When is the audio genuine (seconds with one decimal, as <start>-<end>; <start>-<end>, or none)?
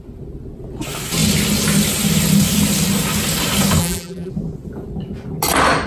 0.0-3.8; 4.3-5.9